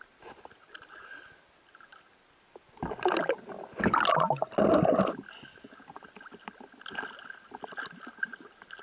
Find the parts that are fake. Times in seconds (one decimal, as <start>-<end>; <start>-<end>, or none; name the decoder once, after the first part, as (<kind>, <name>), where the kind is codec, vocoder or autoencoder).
none

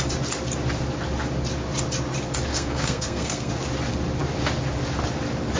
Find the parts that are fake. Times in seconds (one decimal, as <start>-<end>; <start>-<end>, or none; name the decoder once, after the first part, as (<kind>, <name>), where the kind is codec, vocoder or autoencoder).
2.5-3.5 (codec, SNAC)

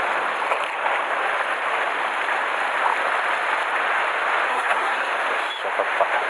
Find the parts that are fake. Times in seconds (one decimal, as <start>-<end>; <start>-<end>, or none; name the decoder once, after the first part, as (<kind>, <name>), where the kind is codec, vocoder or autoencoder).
4.5-5.1 (codec, SNAC)

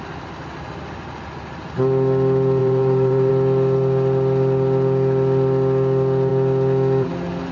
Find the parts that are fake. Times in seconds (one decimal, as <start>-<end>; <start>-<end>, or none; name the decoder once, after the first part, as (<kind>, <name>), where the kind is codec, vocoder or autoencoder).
2.6-3.3 (vocoder, BigVGAN v2)

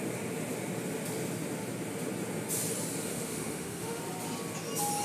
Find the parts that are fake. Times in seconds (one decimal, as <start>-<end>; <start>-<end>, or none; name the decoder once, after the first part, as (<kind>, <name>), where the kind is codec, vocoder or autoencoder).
3.1-4.0 (autoencoder, DAC-VAE)

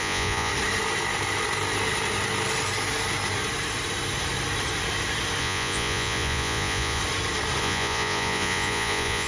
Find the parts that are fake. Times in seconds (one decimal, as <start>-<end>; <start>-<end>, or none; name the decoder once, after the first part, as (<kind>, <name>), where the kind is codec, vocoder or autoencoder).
0.0-0.5 (vocoder, Vocos); 5.4-7.0; 7.6-9.3